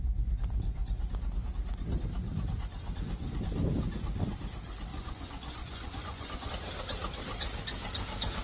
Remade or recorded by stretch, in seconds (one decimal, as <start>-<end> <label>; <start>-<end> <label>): 0.0-4.9 recorded; 4.9-6.5 remade; 6.5-8.4 recorded